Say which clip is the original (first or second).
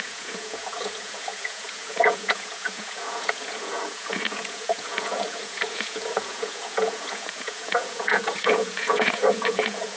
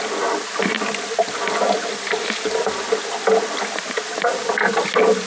second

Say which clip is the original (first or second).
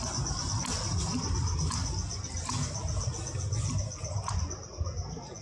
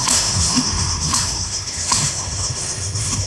first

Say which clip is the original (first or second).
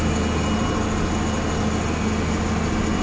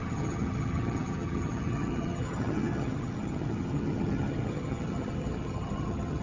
first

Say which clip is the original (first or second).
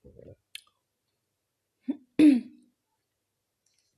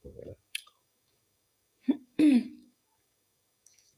first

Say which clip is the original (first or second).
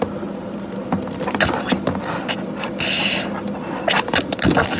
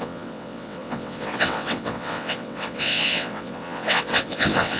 first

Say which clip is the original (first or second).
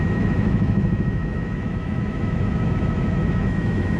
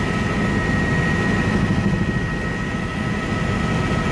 second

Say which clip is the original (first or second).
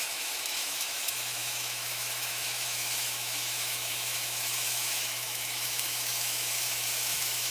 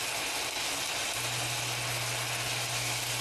second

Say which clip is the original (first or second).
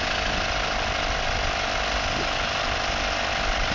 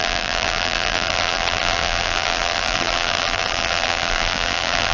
first